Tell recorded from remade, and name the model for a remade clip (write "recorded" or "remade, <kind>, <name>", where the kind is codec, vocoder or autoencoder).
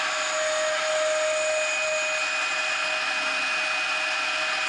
recorded